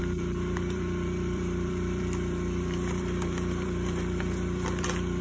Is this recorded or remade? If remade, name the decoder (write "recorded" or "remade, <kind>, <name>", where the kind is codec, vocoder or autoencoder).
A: remade, vocoder, BigVGAN v2